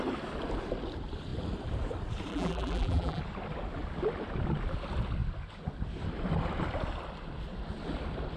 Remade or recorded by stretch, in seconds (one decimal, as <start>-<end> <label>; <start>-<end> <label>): 0.0-2.3 recorded; 2.3-3.2 remade; 3.2-8.4 recorded